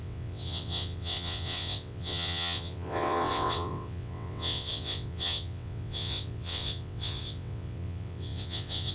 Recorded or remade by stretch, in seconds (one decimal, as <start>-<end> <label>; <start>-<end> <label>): 0.0-8.9 remade